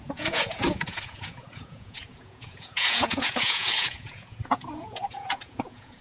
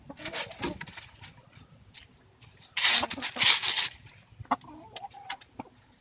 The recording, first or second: second